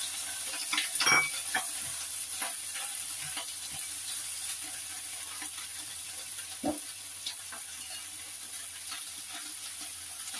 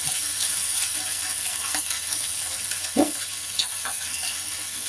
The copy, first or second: second